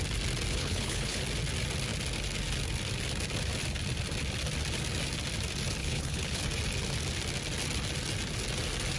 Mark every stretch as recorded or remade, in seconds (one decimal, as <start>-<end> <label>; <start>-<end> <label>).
0.0-0.5 recorded; 0.5-1.2 remade; 1.2-5.8 recorded; 5.8-6.4 remade; 6.4-9.0 recorded